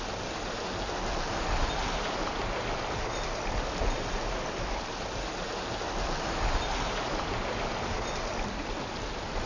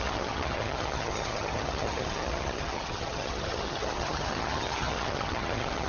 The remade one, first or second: second